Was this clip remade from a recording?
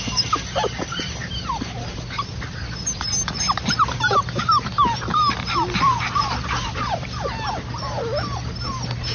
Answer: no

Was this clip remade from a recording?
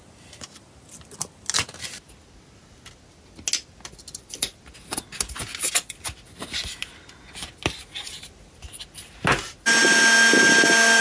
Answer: no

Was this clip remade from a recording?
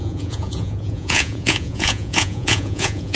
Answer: yes